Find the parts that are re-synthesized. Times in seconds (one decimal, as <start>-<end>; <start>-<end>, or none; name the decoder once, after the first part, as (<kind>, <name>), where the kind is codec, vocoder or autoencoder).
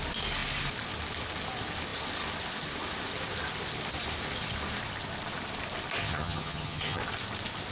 6.0-7.0 (vocoder, HiFi-GAN)